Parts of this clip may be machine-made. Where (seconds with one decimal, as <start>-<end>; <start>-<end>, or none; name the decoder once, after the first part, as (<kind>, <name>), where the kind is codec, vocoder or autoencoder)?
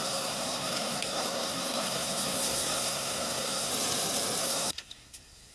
0.0-3.7 (codec, SNAC); 4.4-5.5